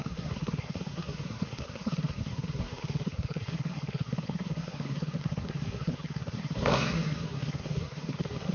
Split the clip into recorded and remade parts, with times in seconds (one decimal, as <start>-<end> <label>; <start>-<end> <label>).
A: 0.0-8.5 remade